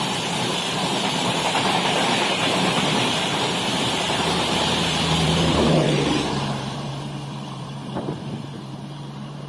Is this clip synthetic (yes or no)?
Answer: yes